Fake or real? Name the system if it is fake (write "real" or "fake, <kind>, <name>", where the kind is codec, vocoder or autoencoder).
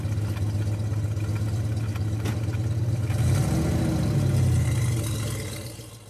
real